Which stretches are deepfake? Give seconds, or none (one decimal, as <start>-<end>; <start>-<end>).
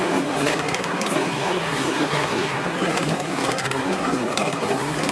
0.0-5.1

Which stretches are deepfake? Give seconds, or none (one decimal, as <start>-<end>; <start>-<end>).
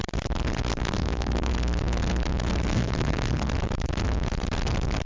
0.7-1.5; 2.7-3.5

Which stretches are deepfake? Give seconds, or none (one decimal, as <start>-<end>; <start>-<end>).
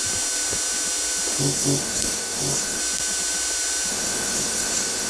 1.4-2.8; 3.9-5.1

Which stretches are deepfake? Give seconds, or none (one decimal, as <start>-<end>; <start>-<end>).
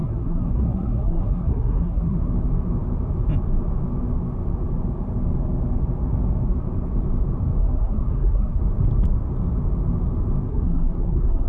0.0-2.3; 7.6-8.6; 10.5-11.5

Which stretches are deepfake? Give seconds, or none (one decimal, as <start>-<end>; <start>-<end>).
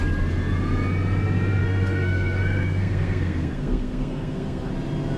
1.6-4.7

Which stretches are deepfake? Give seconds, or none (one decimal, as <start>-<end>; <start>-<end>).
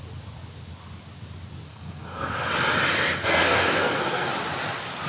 1.7-2.5; 3.2-4.3